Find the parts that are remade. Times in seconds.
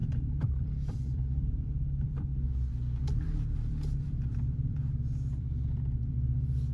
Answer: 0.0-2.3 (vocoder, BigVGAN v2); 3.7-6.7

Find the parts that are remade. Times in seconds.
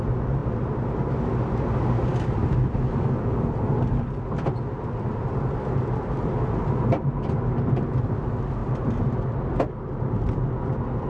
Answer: 8.6-9.2 (vocoder, BigVGAN v2)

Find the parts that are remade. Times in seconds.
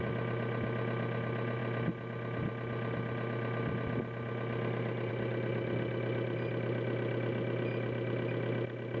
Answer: none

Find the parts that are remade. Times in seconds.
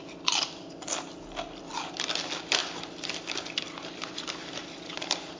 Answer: 0.0-2.6 (vocoder, BigVGAN v2); 3.5-5.4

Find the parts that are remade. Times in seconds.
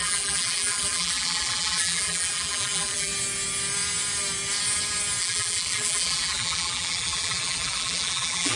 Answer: 0.0-3.1 (vocoder, BigVGAN v2); 5.2-8.6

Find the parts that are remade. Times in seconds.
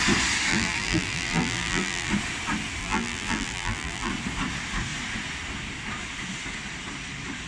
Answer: 0.5-2.1 (vocoder, BigVGAN v2); 2.8-4.1